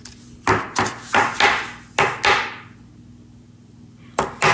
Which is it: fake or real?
real